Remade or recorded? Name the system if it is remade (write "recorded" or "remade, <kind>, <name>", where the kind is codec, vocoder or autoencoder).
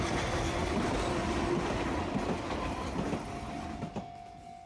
recorded